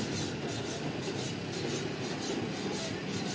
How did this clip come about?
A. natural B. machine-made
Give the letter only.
A